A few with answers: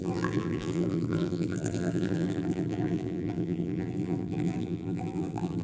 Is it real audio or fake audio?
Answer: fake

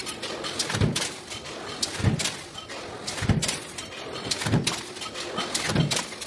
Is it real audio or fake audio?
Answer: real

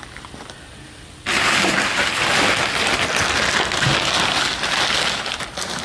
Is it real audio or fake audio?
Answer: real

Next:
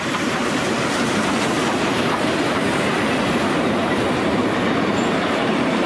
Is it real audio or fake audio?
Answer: fake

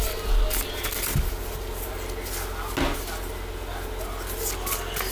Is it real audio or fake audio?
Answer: real